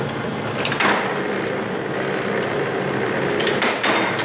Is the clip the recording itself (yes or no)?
yes